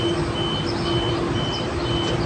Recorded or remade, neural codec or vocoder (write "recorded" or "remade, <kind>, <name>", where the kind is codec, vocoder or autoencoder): recorded